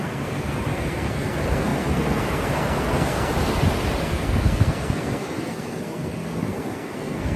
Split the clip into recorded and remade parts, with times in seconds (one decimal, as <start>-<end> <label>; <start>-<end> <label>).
0.0-3.3 remade; 3.3-4.0 recorded; 4.0-7.4 remade

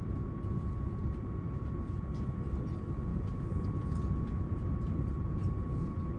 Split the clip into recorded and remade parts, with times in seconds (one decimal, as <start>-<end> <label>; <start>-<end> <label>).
0.0-6.2 recorded

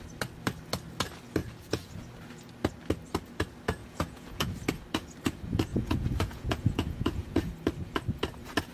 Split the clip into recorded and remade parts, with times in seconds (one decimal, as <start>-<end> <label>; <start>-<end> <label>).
0.0-1.4 recorded; 1.4-1.9 remade; 1.9-3.8 recorded; 3.8-4.5 remade; 4.5-5.7 recorded; 5.7-7.5 remade; 7.5-8.7 recorded

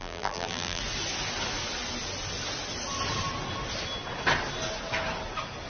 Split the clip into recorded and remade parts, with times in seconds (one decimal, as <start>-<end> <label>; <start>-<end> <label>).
0.0-0.8 remade; 0.8-5.7 recorded

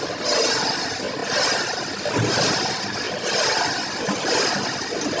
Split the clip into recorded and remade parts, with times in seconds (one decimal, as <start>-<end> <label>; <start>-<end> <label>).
0.0-5.2 recorded

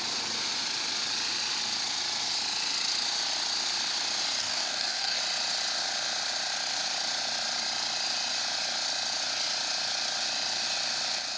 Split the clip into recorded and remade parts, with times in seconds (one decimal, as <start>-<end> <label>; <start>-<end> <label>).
0.0-4.4 recorded; 4.4-5.2 remade; 5.2-11.4 recorded